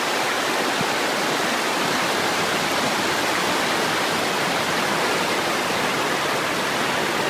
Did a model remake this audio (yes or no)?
no